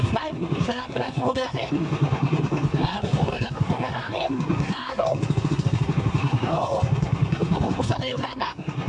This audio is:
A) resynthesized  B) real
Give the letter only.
A